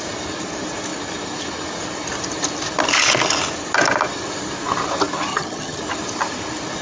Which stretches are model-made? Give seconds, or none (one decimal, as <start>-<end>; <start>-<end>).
5.3-5.8